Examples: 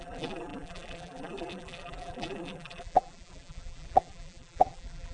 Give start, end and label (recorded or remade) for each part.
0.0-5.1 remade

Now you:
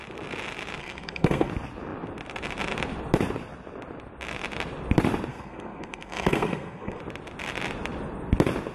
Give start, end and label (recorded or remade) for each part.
0.0-0.8 recorded; 0.8-1.5 remade; 1.5-5.3 recorded; 5.3-7.0 remade; 7.0-8.7 recorded

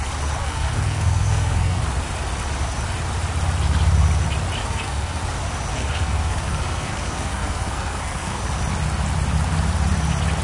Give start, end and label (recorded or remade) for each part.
0.0-0.4 recorded; 0.4-1.8 remade; 1.8-4.6 recorded; 4.6-5.2 remade; 5.2-5.7 recorded; 5.7-8.4 remade; 8.4-10.4 recorded

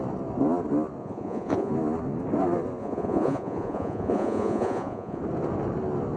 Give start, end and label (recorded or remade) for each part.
0.0-1.0 recorded; 1.0-1.7 remade; 1.7-2.8 recorded; 2.8-5.2 remade; 5.2-6.2 recorded